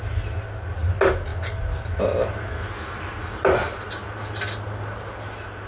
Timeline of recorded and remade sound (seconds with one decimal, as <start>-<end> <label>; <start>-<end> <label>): 0.0-5.7 recorded